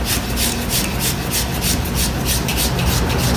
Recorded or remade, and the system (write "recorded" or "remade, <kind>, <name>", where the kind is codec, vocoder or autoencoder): recorded